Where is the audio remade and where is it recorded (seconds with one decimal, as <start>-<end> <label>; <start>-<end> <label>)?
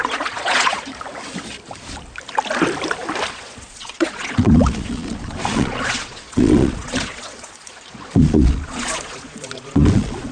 0.0-0.9 remade; 0.9-3.3 recorded; 3.3-10.3 remade